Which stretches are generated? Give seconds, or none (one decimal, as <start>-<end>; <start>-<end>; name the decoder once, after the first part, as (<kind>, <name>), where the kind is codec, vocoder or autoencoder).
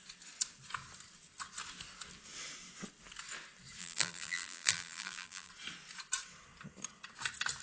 3.8-5.5 (vocoder, BigVGAN v2)